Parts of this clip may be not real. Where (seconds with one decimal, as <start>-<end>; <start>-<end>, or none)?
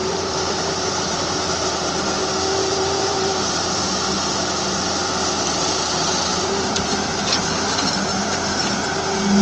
0.0-1.2; 2.6-7.1; 8.1-8.7